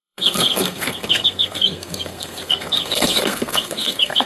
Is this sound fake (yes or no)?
yes